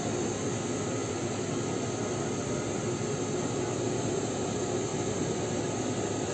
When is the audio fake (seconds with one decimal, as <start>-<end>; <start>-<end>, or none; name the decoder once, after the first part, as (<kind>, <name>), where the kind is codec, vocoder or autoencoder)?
1.0-1.5 (vocoder, BigVGAN v2); 4.9-5.6